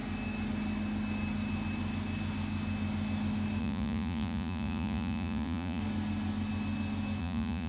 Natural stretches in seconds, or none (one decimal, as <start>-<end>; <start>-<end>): 0.0-3.6; 5.8-7.2